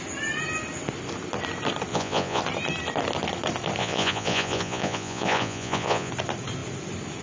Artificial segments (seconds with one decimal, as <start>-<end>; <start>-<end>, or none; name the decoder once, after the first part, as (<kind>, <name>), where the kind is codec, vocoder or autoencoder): 1.9-2.4 (vocoder, Vocos); 3.8-6.1